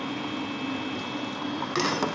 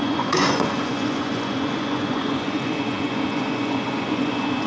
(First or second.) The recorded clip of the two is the first